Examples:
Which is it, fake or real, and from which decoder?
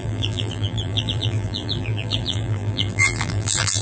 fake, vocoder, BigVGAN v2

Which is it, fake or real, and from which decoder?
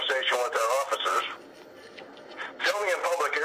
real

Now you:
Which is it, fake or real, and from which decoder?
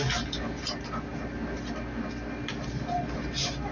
real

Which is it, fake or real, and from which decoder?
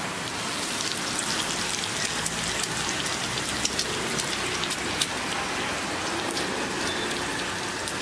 real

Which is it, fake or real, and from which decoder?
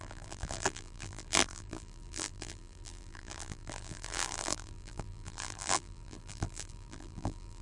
fake, vocoder, BigVGAN v2